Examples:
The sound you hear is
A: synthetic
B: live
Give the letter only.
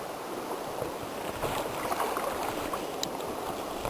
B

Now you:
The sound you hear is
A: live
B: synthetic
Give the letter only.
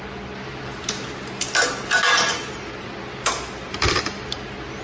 A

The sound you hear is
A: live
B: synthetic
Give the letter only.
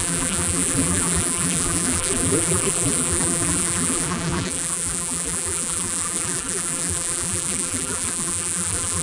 B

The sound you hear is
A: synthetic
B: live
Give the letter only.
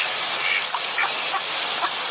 B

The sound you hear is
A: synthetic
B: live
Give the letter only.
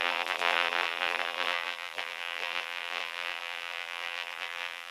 A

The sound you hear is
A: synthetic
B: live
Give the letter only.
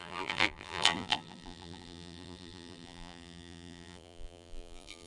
A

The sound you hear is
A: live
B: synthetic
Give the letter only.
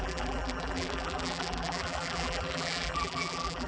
B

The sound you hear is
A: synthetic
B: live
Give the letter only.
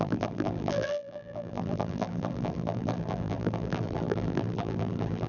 A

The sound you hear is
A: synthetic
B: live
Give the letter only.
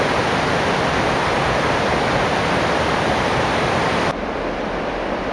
B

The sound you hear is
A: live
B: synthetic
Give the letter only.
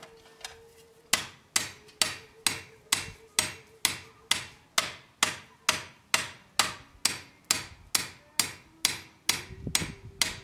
A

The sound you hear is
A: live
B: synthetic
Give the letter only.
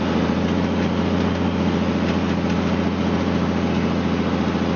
A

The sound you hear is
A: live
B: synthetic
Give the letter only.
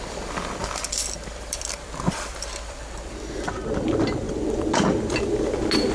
B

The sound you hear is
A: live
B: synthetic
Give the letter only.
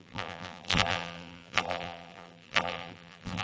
B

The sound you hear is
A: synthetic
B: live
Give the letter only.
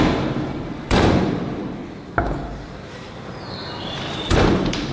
A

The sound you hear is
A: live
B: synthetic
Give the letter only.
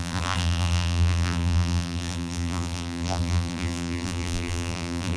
B